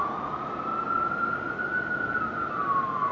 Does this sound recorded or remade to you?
recorded